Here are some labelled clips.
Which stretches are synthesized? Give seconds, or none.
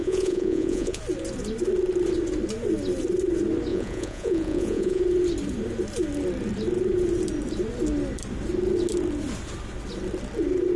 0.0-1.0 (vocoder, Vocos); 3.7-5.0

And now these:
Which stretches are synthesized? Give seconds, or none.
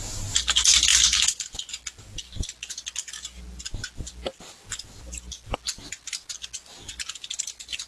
none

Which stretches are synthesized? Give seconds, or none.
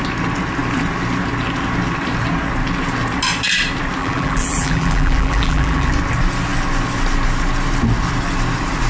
4.0-5.9 (vocoder, BigVGAN v2)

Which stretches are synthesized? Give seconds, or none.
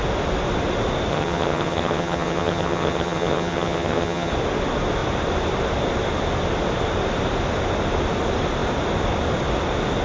1.1-4.3 (vocoder, HiFi-GAN)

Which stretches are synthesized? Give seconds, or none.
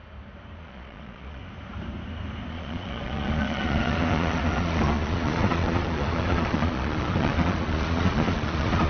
0.6-1.4 (vocoder, Vocos); 2.5-8.9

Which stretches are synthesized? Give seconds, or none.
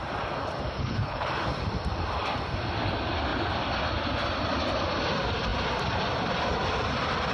0.8-1.3 (codec, HILCodec)